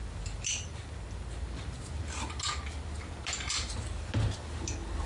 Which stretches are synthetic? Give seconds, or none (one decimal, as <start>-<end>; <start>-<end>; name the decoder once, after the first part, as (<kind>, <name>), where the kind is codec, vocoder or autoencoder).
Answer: none

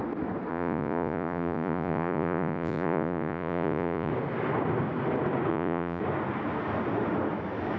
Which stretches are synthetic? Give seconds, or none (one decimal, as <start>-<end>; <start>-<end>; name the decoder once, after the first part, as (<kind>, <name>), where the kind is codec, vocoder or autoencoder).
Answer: 0.5-4.1 (vocoder, Vocos); 5.5-6.0

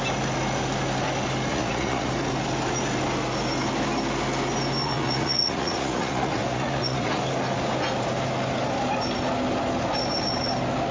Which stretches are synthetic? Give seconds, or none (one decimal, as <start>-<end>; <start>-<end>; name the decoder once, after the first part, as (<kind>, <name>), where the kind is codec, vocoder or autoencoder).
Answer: 1.5-2.1 (vocoder, Vocos); 4.8-7.2

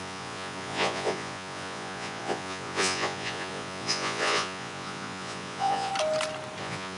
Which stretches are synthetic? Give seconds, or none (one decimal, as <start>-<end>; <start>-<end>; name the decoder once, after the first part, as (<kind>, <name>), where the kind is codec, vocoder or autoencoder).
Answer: 0.0-5.9 (vocoder, Vocos); 6.6-7.0

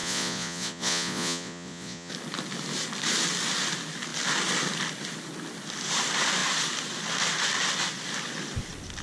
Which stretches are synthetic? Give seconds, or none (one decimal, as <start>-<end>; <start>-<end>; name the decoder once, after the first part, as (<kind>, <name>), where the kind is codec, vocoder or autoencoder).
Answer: 0.0-2.1 (vocoder, Vocos)

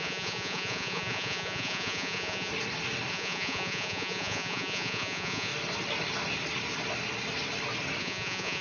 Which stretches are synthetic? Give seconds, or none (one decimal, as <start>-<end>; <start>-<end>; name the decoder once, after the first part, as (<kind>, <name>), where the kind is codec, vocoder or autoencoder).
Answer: 0.0-2.5 (vocoder, Vocos); 3.1-5.5; 8.0-8.6